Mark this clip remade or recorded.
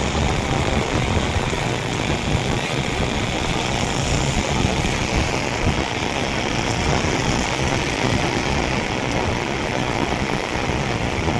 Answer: remade